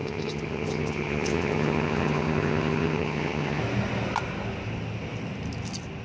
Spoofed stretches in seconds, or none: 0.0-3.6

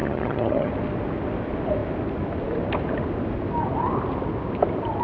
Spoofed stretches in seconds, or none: 0.0-0.7

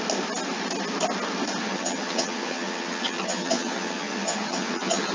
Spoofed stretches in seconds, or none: 1.6-5.1